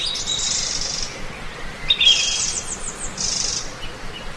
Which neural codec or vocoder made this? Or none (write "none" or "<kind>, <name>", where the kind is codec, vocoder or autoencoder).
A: none